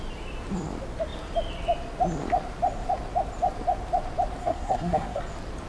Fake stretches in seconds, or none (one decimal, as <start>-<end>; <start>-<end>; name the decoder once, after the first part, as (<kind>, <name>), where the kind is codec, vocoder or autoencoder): 4.4-5.2 (codec, SNAC)